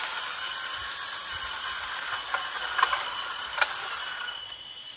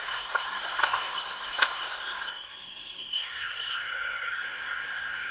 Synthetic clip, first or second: second